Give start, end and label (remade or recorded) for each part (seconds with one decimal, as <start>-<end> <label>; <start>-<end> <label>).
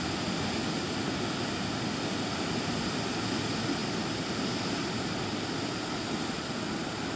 0.0-7.2 recorded